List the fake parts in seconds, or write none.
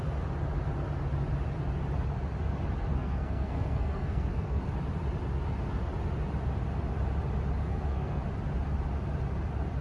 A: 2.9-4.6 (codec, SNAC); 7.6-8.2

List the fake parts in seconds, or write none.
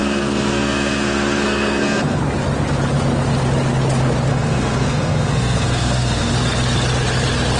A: 0.0-2.2 (codec, SNAC); 4.3-6.3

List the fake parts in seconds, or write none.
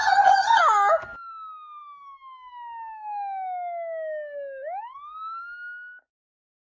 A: 0.0-0.6 (vocoder, HiFi-GAN)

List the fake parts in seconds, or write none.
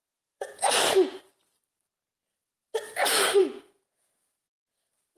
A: 0.0-0.7 (vocoder, Vocos); 3.4-4.8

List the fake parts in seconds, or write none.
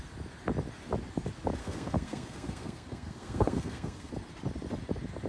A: 1.6-4.1 (codec, SNAC)